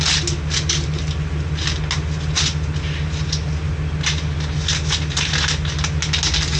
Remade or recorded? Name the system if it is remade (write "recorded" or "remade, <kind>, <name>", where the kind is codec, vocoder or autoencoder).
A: recorded